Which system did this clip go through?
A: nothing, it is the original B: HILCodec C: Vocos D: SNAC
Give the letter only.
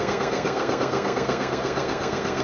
D